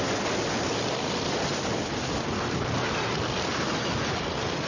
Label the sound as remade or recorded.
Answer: recorded